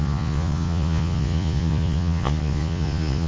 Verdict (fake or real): fake